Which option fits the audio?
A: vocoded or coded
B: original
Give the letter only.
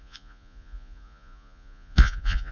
A